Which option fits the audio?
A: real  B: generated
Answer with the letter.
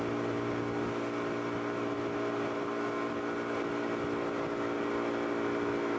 A